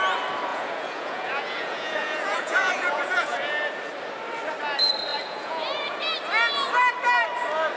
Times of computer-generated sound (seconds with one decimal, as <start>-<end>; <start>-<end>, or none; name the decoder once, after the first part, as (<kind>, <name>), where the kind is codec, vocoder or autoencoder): 0.5-3.6 (vocoder, Vocos); 5.1-6.0